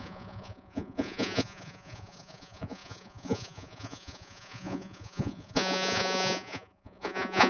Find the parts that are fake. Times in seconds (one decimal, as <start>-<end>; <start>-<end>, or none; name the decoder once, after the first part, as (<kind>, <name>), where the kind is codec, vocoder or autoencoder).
0.0-7.5 (vocoder, Vocos)